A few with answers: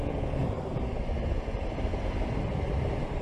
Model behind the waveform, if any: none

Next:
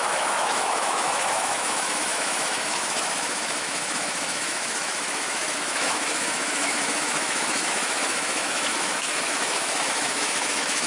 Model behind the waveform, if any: autoencoder, DAC-VAE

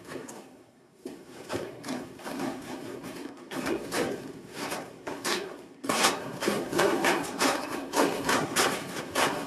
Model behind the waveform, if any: codec, SNAC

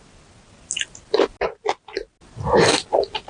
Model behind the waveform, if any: none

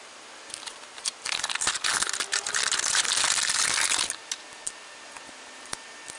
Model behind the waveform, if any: none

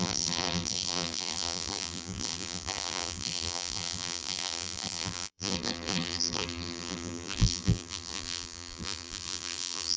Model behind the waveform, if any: vocoder, BigVGAN v2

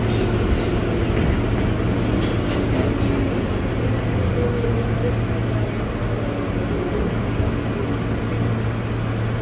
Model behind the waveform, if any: none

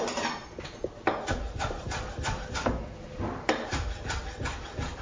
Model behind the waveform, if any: vocoder, BigVGAN v2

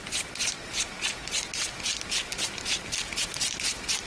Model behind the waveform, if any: none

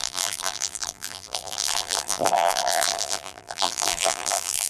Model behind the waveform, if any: vocoder, BigVGAN v2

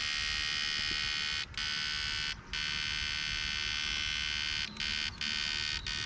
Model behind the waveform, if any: none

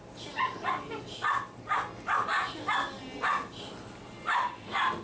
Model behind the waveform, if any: none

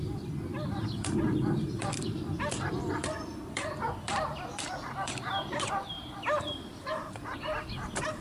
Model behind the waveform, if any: vocoder, BigVGAN v2